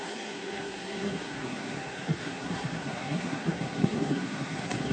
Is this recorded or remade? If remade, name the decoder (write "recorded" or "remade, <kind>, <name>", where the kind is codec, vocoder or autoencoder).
remade, codec, SNAC